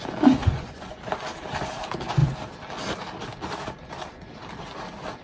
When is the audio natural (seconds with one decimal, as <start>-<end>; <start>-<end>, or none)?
0.0-0.4; 1.0-5.2